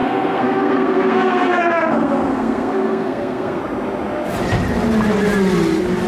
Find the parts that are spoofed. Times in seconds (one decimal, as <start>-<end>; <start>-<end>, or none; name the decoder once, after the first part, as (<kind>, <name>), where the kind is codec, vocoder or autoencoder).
0.0-3.6 (codec, SNAC)